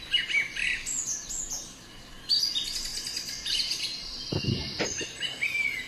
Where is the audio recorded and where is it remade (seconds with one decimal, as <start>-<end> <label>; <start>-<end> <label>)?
0.0-5.9 recorded